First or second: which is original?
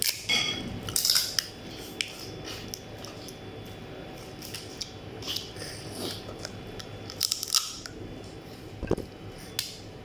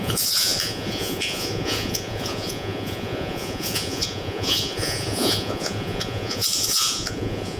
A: first